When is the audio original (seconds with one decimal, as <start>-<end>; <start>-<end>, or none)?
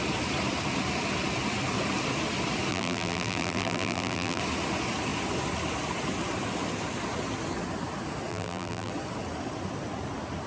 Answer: 0.0-2.7; 4.4-8.3; 8.9-10.5